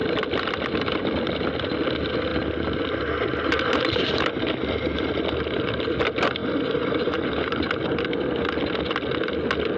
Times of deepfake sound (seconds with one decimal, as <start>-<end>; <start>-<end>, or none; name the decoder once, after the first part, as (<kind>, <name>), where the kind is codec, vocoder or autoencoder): 0.0-1.8 (vocoder, BigVGAN v2); 6.4-7.7